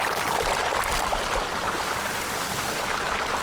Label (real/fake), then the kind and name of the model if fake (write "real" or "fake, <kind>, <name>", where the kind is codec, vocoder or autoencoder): real